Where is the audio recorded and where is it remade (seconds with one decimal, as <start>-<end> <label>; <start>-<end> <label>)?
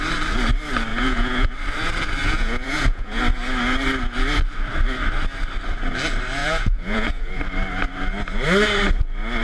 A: 0.0-0.9 recorded; 0.9-1.5 remade; 1.5-2.2 recorded; 2.2-3.2 remade; 3.2-6.4 recorded; 6.4-7.4 remade; 7.4-9.4 recorded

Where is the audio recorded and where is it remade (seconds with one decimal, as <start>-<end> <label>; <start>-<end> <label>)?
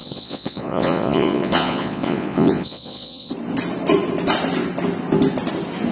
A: 0.0-3.3 remade; 3.3-5.9 recorded